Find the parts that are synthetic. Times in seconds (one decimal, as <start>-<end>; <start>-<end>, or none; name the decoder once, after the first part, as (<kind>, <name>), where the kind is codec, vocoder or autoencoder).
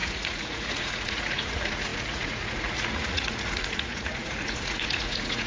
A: 0.0-5.5 (vocoder, Vocos)